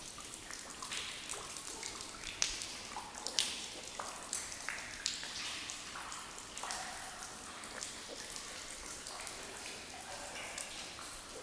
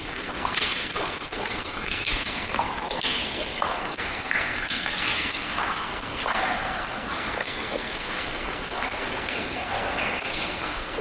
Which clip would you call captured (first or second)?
first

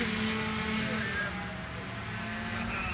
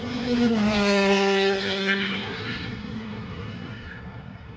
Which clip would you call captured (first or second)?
first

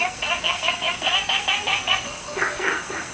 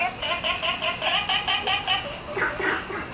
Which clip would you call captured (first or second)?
second